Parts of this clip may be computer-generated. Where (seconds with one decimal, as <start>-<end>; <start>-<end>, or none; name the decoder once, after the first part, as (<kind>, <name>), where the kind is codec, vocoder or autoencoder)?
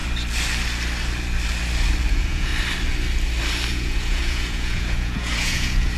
2.1-2.5 (vocoder, Vocos); 3.7-6.0